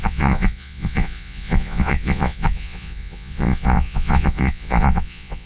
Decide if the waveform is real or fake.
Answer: fake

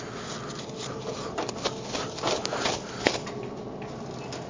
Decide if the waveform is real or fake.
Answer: real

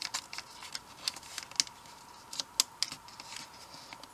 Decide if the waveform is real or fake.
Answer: real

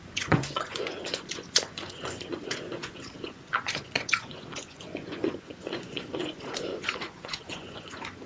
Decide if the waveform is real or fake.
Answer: fake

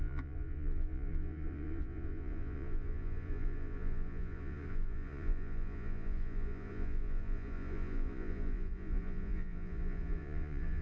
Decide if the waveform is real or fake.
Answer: fake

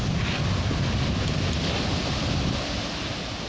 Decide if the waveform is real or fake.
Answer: real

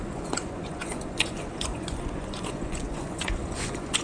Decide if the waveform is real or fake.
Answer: fake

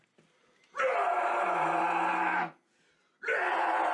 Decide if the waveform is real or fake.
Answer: real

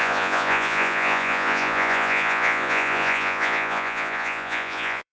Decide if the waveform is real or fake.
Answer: fake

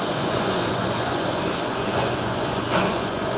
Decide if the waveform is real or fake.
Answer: fake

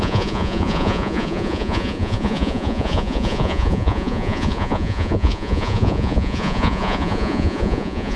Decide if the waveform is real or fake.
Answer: fake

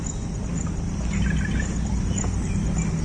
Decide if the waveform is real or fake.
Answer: real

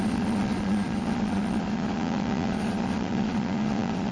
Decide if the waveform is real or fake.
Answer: fake